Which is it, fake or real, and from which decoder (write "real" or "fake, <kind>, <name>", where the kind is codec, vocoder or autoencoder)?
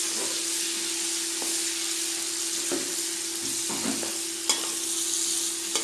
real